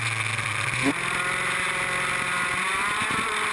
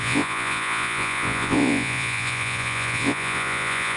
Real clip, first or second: first